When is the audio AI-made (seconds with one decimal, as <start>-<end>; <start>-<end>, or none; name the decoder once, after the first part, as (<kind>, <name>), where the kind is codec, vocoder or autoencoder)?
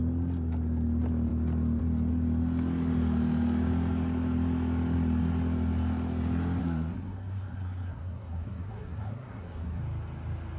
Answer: 6.6-9.8 (codec, SNAC)